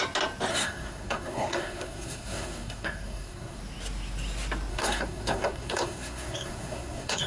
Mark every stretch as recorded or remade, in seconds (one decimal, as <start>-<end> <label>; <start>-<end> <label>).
0.0-0.5 recorded; 0.5-3.6 remade; 3.6-4.7 recorded; 4.7-7.3 remade